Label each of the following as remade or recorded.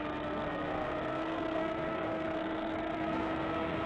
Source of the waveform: remade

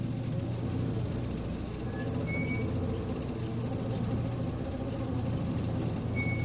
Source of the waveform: recorded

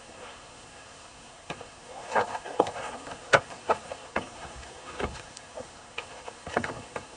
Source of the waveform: remade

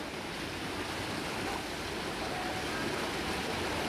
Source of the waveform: recorded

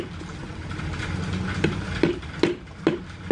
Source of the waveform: recorded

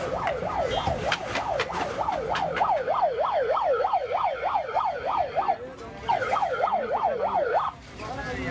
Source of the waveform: recorded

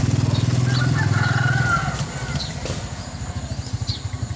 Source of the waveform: recorded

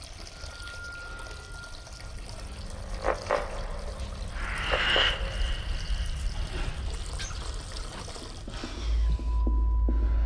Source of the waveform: recorded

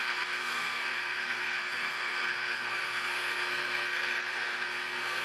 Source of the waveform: remade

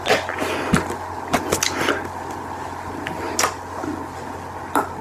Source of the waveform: recorded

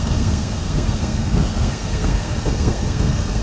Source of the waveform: remade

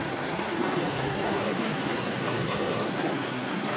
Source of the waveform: remade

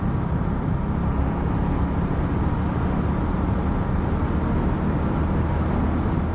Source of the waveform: recorded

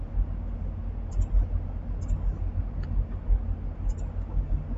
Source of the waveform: recorded